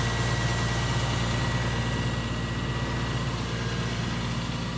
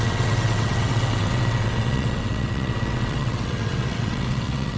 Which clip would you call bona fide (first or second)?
first